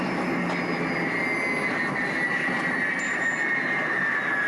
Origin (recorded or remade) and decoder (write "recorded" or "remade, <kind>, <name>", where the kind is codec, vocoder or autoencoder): recorded